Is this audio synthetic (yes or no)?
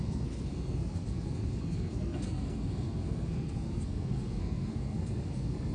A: yes